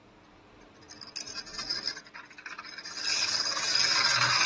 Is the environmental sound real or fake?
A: real